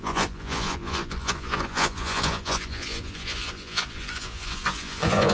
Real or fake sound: fake